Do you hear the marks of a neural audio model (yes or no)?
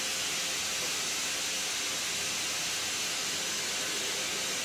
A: no